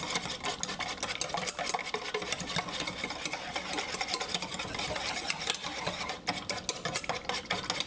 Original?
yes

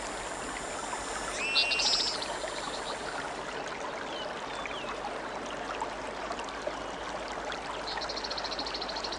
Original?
yes